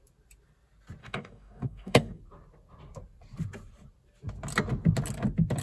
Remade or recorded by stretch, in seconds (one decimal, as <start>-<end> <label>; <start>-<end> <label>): 0.0-1.0 recorded; 1.0-2.2 remade; 2.2-5.6 recorded